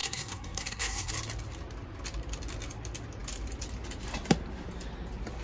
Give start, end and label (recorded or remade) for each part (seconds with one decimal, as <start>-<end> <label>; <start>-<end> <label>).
0.0-1.1 remade; 1.1-5.4 recorded